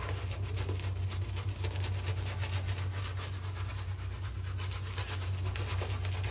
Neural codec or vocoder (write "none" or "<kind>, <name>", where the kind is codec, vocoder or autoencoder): none